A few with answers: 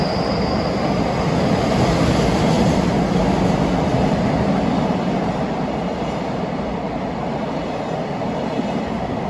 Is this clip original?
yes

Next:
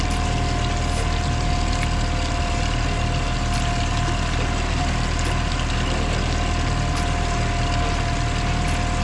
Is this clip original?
yes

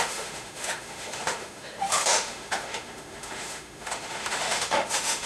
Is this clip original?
no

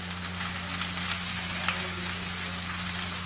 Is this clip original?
yes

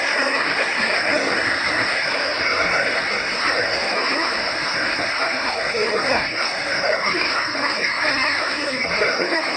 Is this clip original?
no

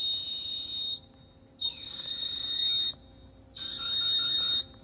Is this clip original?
yes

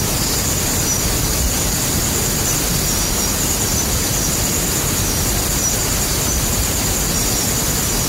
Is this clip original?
yes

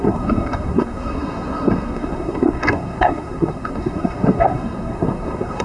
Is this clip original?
no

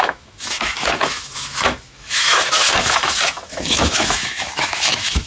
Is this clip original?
no